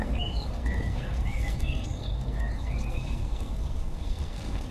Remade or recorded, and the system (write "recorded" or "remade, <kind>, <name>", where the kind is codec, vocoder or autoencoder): remade, codec, SNAC